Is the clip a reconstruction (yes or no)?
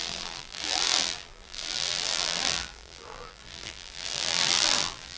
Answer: yes